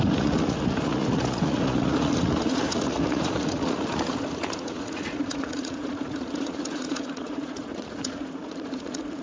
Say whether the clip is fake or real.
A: fake